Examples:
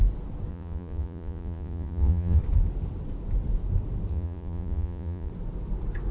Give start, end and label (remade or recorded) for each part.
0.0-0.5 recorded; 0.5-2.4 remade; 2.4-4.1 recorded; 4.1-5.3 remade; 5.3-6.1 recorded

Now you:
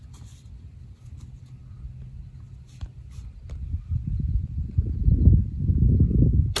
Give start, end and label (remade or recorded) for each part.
0.0-6.6 recorded

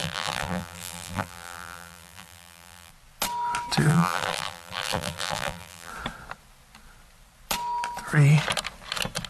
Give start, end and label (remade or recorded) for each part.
0.0-2.9 remade; 2.9-3.9 recorded; 3.9-5.9 remade; 5.9-9.3 recorded